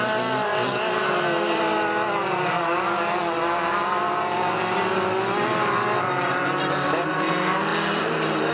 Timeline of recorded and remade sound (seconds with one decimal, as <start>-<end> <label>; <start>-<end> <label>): 0.0-8.5 recorded